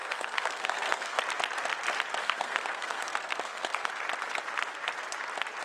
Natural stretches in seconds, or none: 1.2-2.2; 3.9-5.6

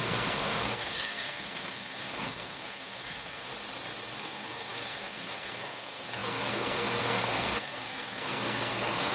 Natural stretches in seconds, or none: 3.5-4.2